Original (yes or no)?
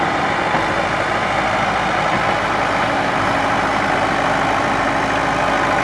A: yes